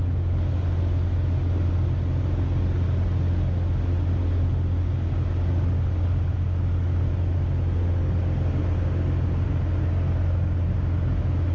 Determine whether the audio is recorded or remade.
recorded